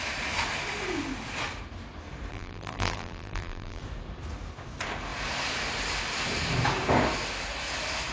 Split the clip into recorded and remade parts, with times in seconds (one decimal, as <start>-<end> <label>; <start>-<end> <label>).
0.0-2.3 recorded; 2.3-3.8 remade; 3.8-8.1 recorded